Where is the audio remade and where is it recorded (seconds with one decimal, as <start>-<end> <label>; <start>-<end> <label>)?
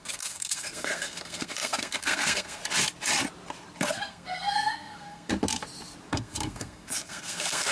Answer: 0.0-2.6 remade; 2.6-3.9 recorded; 3.9-5.3 remade; 5.3-6.1 recorded; 6.1-7.7 remade